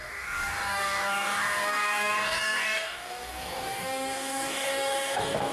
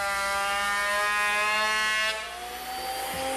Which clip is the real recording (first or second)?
second